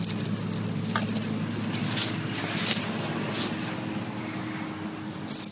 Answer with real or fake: real